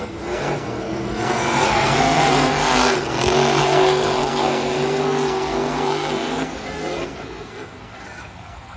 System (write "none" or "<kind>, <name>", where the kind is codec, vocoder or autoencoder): codec, SNAC